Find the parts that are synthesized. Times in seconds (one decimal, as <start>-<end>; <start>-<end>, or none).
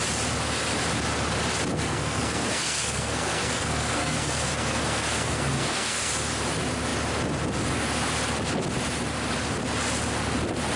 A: 1.7-6.1